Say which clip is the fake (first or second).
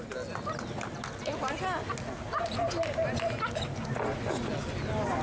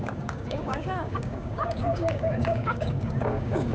second